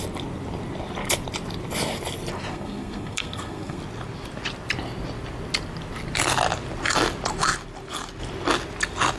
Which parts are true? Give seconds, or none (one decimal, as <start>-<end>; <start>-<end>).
0.0-2.5; 3.8-9.2

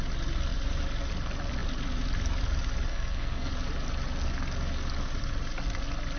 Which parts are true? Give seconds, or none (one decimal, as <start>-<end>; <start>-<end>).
0.0-2.9; 3.5-6.2